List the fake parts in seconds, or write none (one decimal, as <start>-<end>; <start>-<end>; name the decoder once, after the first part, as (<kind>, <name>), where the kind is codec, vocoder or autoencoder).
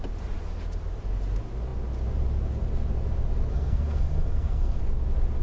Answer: 3.5-4.8 (codec, SNAC)